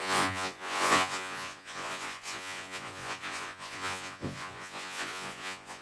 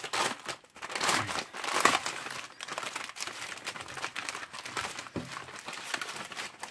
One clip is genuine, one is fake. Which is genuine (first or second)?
second